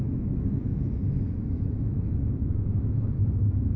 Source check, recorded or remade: remade